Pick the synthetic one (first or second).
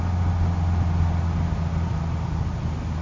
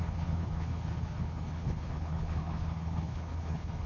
second